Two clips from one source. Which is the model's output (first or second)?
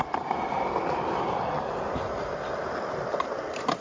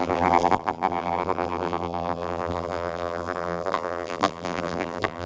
second